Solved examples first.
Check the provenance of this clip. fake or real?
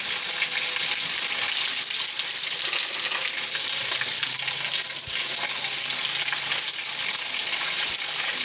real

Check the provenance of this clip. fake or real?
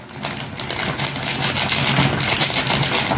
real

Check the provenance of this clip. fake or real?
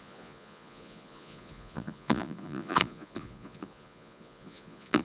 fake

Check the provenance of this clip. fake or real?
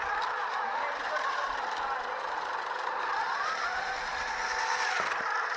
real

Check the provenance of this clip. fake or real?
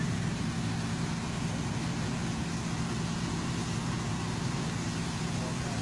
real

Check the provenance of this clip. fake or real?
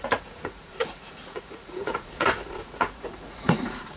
fake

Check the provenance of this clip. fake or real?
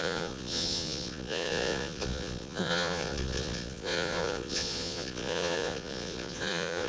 fake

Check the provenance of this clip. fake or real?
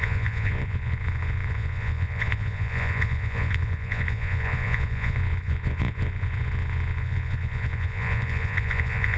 fake